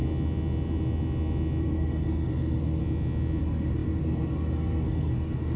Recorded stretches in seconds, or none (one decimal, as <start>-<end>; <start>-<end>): 0.0-1.6; 2.8-3.4